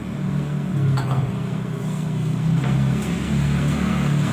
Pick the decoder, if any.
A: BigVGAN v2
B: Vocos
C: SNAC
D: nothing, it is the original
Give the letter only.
C